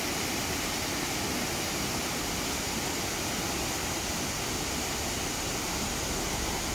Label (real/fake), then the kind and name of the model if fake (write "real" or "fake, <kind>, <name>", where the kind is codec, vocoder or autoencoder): real